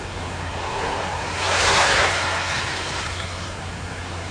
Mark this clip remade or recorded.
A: remade